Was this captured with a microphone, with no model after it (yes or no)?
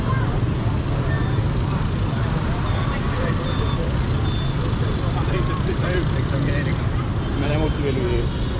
yes